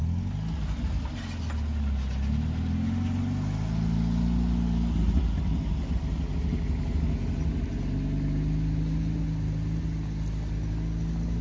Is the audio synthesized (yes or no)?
no